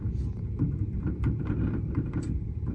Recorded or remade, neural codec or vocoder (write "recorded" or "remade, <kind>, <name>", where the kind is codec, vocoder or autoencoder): remade, vocoder, BigVGAN v2